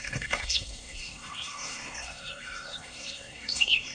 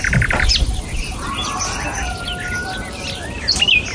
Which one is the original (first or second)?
second